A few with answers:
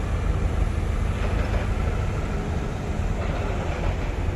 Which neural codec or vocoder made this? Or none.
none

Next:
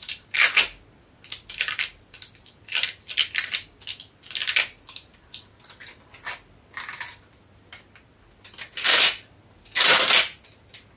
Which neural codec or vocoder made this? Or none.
none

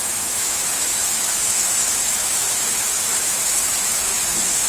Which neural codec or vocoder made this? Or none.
autoencoder, DAC-VAE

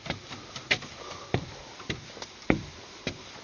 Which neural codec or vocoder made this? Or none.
none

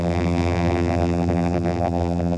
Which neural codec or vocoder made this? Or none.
vocoder, BigVGAN v2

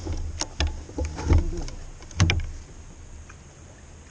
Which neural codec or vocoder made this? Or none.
none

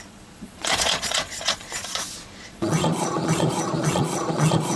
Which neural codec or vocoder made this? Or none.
vocoder, Vocos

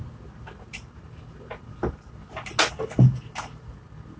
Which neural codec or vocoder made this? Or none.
none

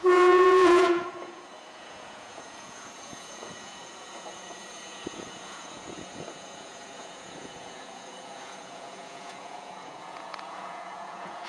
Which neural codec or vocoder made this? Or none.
vocoder, Vocos